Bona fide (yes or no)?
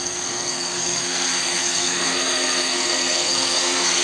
no